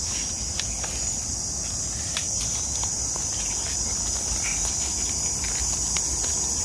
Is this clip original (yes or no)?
yes